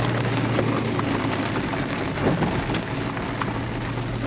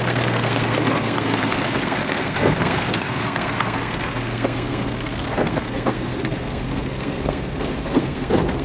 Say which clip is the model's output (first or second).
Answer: second